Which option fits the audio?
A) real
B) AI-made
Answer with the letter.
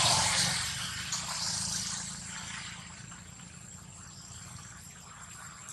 B